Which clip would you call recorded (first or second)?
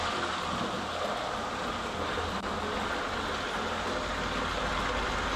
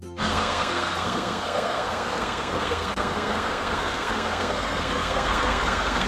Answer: first